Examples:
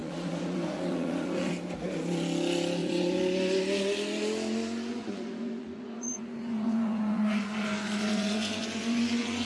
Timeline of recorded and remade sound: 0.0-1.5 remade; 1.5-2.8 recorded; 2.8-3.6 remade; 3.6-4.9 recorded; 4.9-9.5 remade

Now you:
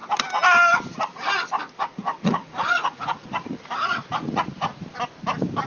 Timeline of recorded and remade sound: 0.0-2.1 recorded; 2.1-4.5 remade; 4.5-5.7 recorded

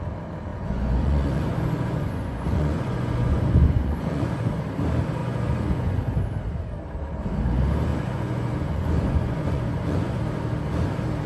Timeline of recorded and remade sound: 0.0-0.5 recorded; 0.5-4.5 remade; 4.5-5.2 recorded; 5.2-6.0 remade; 6.0-7.9 recorded; 7.9-10.2 remade; 10.2-11.3 recorded

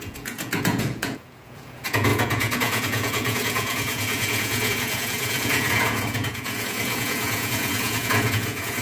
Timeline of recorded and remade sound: 0.0-8.8 remade

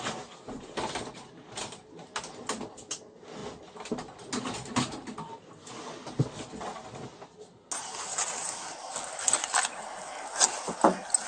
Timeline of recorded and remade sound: 0.0-11.3 recorded

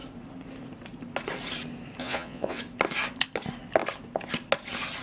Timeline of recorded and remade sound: 0.0-2.0 recorded; 2.0-2.6 remade; 2.6-5.0 recorded

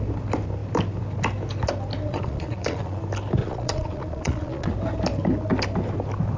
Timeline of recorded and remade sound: 0.0-2.1 recorded; 2.1-3.0 remade; 3.0-3.4 recorded; 3.4-4.7 remade; 4.7-6.4 recorded

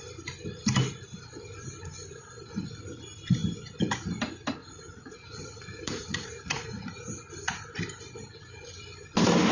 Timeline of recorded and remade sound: 0.0-4.6 recorded; 4.6-6.9 remade; 6.9-9.5 recorded